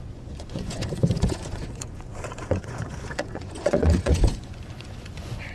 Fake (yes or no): yes